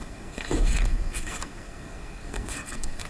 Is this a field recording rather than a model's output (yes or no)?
no